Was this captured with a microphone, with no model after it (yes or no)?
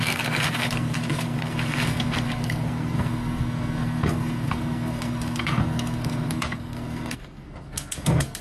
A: no